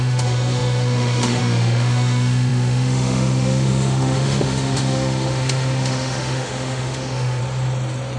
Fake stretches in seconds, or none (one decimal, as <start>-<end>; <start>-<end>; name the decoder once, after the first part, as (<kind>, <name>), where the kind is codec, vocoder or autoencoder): 0.0-7.4 (autoencoder, DAC-VAE)